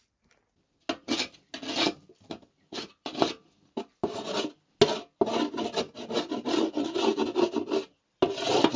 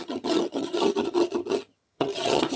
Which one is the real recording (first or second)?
first